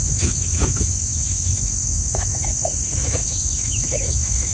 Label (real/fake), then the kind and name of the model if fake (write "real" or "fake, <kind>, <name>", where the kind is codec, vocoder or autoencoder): fake, autoencoder, DAC-VAE